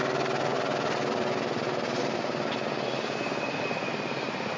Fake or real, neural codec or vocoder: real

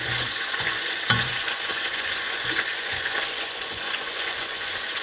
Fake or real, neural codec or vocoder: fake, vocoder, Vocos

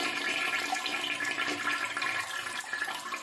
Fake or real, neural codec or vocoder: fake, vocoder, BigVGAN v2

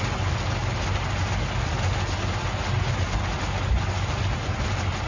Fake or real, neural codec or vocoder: real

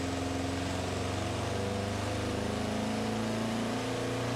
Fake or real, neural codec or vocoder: real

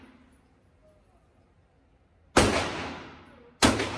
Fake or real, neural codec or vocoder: real